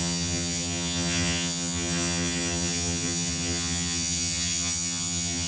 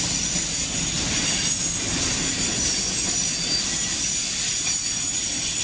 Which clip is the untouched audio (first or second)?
second